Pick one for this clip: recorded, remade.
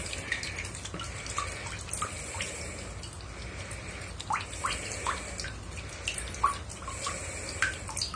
recorded